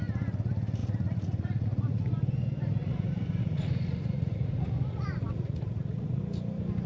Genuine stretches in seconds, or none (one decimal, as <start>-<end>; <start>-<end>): 0.0-0.8; 2.1-2.8; 6.2-6.9